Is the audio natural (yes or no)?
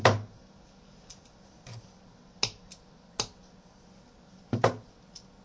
yes